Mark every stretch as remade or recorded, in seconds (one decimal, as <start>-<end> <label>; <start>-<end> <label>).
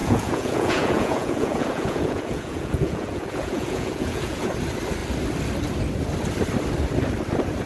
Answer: 0.0-4.5 remade; 4.5-7.7 recorded